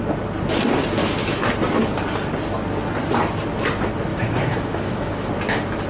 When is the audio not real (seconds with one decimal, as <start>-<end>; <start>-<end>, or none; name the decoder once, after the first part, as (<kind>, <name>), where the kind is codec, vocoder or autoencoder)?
1.0-1.5 (autoencoder, DAC-VAE); 4.1-5.3